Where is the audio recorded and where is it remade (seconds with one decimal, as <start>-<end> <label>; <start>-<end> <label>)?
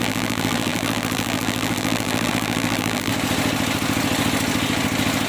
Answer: 0.0-3.1 remade; 3.1-5.3 recorded